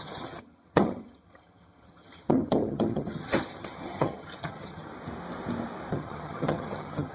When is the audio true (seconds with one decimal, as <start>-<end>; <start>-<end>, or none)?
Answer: 4.9-5.9